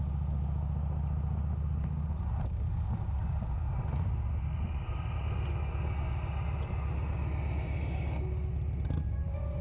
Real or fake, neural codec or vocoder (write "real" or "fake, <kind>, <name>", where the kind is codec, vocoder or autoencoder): real